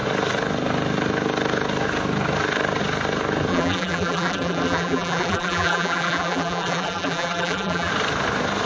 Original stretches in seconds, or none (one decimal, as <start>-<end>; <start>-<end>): 0.0-3.5; 7.9-8.7